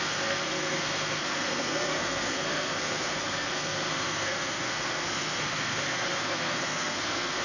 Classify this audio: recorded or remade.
remade